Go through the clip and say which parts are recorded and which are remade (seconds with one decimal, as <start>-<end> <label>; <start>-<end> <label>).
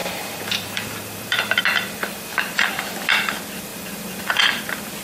0.0-1.6 remade; 1.6-2.3 recorded; 2.3-2.8 remade; 2.8-5.0 recorded